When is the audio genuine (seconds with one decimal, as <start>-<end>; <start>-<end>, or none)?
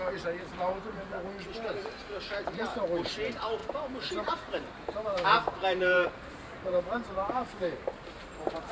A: 0.0-3.6